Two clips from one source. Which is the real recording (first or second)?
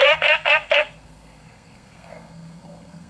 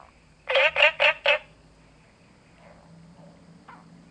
second